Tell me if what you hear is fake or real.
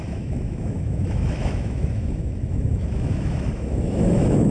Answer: fake